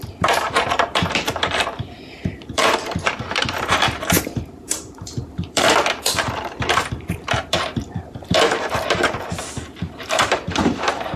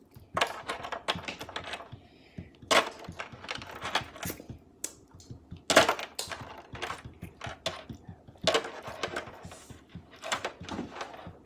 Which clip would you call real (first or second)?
second